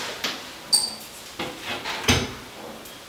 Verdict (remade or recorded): recorded